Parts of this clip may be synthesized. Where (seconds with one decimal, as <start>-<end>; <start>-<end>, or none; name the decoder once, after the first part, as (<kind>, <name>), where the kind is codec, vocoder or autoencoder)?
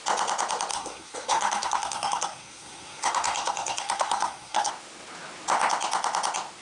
0.7-4.7 (codec, SNAC)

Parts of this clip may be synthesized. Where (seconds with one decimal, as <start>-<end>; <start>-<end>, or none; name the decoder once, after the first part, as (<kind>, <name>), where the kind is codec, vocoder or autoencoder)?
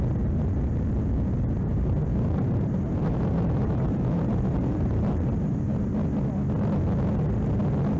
1.7-5.9 (vocoder, BigVGAN v2)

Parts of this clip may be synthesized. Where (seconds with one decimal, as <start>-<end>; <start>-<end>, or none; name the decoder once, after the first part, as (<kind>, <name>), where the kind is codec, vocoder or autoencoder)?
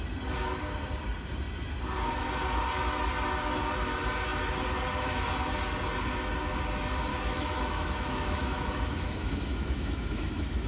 7.1-10.7 (autoencoder, DAC-VAE)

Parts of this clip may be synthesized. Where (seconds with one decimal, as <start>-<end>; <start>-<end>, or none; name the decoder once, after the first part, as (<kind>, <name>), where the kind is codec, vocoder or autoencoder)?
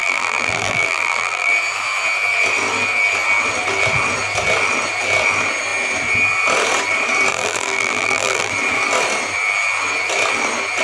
0.0-1.5 (vocoder, BigVGAN v2); 7.3-8.5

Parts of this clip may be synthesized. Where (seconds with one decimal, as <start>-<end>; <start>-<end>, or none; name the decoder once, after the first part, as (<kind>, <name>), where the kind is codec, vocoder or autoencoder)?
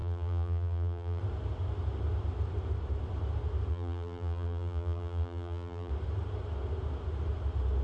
0.0-1.2 (vocoder, BigVGAN v2); 3.7-5.9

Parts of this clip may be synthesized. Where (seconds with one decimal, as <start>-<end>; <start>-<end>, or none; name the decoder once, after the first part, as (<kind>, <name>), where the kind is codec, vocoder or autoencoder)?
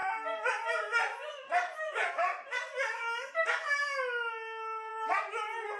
none